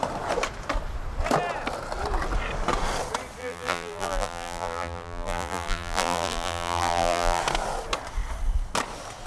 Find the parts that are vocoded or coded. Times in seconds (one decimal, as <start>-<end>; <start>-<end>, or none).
3.4-7.4